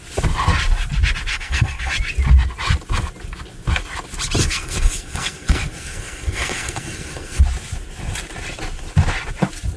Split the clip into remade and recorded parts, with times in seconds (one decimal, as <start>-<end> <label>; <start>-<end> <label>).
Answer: 0.0-1.3 recorded; 1.3-1.9 remade; 1.9-4.4 recorded; 4.4-7.4 remade; 7.4-9.8 recorded